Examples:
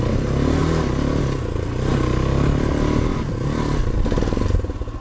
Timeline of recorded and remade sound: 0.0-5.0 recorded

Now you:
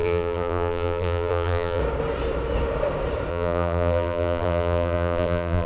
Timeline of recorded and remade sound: 0.0-1.8 remade; 1.8-3.3 recorded; 3.3-5.7 remade

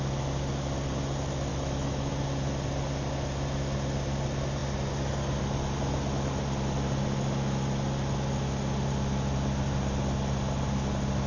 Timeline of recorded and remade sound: 0.0-1.5 recorded; 1.5-2.1 remade; 2.1-11.3 recorded

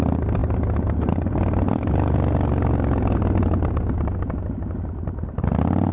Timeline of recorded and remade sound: 0.0-5.9 recorded

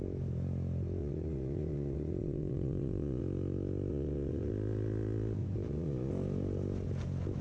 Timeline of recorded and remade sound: 0.0-1.0 recorded; 1.0-3.2 remade; 3.2-3.9 recorded; 3.9-4.5 remade; 4.5-5.4 recorded; 5.4-6.1 remade; 6.1-7.4 recorded

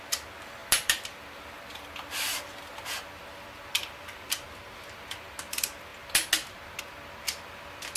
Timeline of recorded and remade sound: 0.0-0.6 recorded; 0.6-4.6 remade; 4.6-8.0 recorded

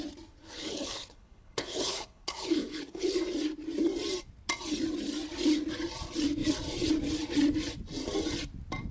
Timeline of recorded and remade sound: 0.0-0.4 recorded; 0.4-3.1 remade; 3.1-8.9 recorded

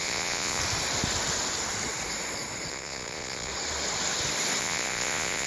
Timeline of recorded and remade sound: 0.0-0.6 remade; 0.6-2.7 recorded; 2.7-3.5 remade; 3.5-4.6 recorded; 4.6-5.5 remade